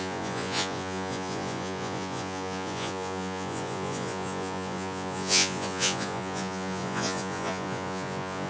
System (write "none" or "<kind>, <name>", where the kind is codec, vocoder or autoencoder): vocoder, Vocos